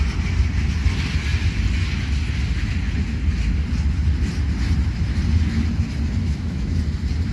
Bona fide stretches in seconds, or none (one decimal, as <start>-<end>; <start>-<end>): 0.0-6.2; 6.8-7.3